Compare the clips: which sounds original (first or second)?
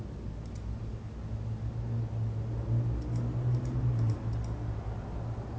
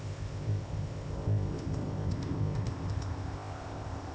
first